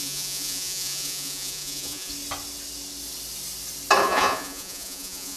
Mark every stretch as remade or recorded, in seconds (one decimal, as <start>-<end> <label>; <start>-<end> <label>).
0.0-2.1 remade; 2.1-4.0 recorded; 4.0-5.4 remade